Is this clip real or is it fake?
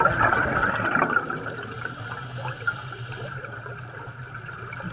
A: real